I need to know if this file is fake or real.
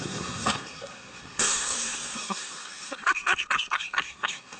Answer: fake